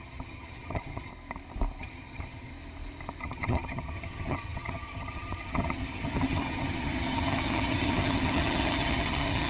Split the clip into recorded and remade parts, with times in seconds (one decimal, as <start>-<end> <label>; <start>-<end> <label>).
0.0-1.1 remade; 1.1-1.8 recorded; 1.8-2.5 remade; 2.5-3.2 recorded; 3.2-9.5 remade